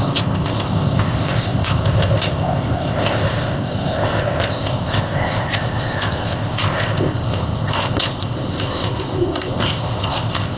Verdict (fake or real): fake